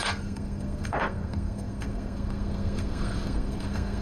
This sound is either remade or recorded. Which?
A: remade